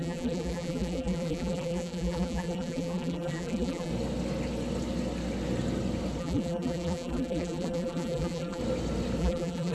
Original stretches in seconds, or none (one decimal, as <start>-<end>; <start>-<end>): 3.9-6.2; 8.6-9.2